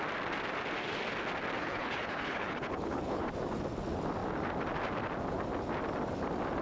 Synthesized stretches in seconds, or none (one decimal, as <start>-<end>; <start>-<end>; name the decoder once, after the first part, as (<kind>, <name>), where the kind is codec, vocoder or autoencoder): 1.6-3.2 (codec, HILCodec)